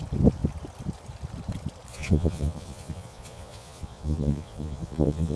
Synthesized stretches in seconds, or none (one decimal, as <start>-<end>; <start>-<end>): 1.9-5.4